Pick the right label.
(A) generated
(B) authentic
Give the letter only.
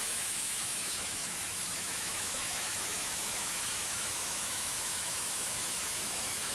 A